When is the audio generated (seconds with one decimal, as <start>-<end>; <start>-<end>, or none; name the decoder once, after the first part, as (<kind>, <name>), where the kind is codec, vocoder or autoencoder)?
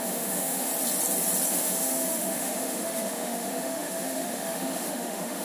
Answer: 0.0-0.7 (autoencoder, DAC-VAE); 1.5-5.4